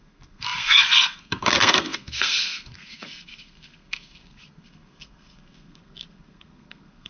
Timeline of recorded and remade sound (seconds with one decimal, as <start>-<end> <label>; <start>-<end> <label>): 0.0-7.1 remade